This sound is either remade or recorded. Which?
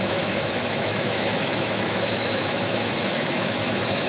remade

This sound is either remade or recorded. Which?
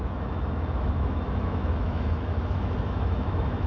remade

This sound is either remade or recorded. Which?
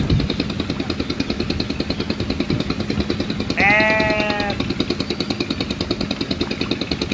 recorded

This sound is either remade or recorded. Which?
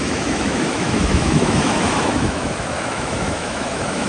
remade